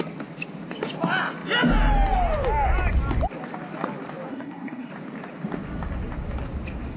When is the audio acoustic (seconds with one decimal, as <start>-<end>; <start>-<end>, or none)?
0.0-4.3; 4.9-7.0